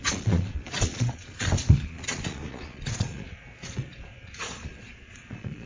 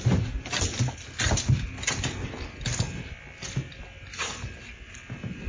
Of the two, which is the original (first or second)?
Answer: second